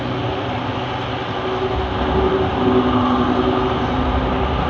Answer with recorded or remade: recorded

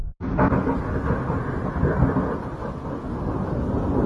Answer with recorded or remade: recorded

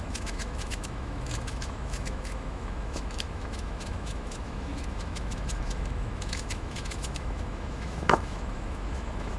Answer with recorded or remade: remade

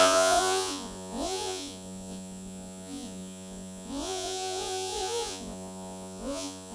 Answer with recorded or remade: remade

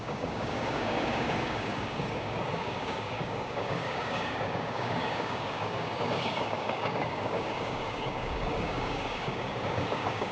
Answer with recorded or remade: remade